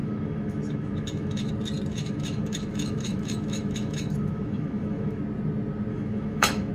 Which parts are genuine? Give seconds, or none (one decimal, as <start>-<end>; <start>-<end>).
1.5-1.9; 5.2-5.9